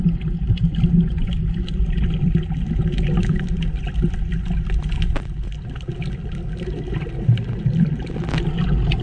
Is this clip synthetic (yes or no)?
no